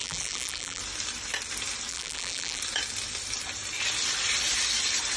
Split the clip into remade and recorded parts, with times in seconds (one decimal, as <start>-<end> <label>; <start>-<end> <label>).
0.0-0.8 remade; 0.8-1.9 recorded; 1.9-2.6 remade; 2.6-5.2 recorded